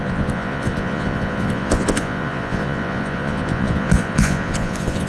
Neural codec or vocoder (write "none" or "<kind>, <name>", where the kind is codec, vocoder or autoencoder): vocoder, Vocos